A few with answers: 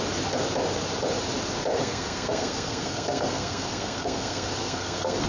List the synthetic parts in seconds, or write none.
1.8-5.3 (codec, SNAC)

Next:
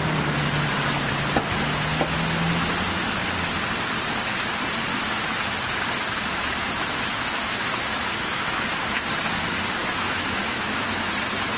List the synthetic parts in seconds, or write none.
4.9-5.4 (autoencoder, DAC-VAE); 7.1-8.8; 9.8-11.1

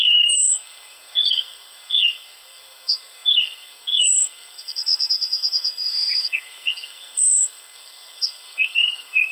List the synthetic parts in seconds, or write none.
0.0-9.3 (codec, SNAC)

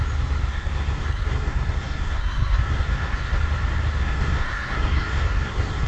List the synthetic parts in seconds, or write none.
0.5-3.4 (codec, SNAC); 4.0-5.9

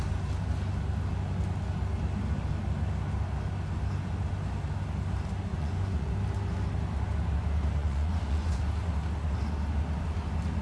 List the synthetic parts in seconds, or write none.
5.5-6.1 (vocoder, Vocos); 7.8-8.6

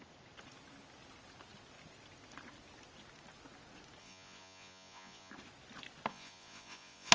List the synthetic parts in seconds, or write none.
4.0-5.3 (vocoder, Vocos); 6.1-7.1

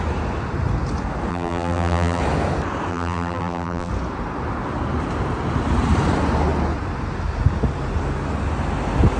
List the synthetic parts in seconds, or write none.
1.3-2.2 (vocoder, BigVGAN v2); 2.9-3.9

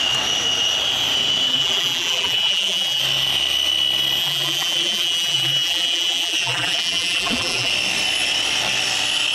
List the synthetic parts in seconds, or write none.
1.5-3.0 (vocoder, BigVGAN v2); 4.2-7.7